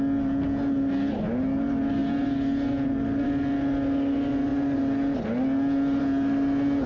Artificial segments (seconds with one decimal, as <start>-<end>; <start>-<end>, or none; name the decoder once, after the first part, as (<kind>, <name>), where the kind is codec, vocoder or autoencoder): none